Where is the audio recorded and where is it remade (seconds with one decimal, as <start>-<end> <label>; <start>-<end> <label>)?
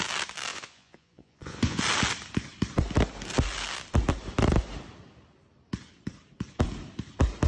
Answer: 0.0-0.5 recorded; 0.5-1.8 remade; 1.8-7.5 recorded